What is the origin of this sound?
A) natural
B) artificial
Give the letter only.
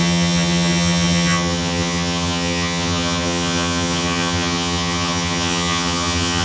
B